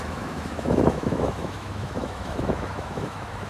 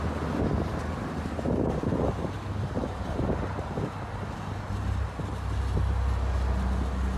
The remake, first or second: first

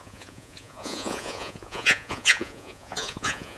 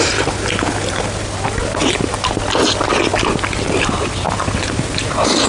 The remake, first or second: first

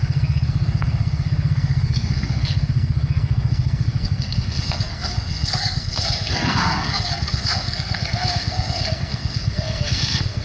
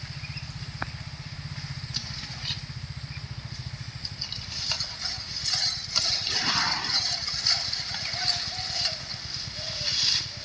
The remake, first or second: first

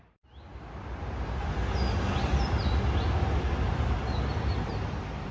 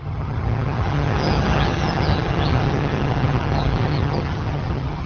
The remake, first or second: second